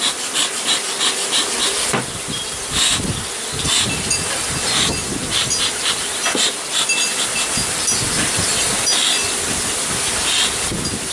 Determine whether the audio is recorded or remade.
recorded